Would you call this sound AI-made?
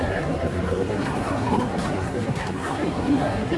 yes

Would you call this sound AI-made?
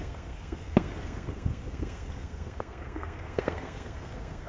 yes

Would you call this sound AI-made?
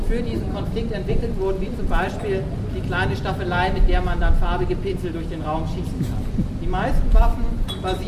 no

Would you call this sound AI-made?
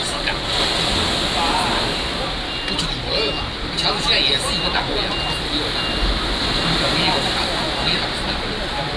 no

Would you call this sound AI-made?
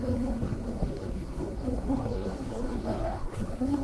yes